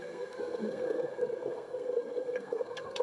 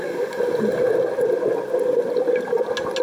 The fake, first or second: first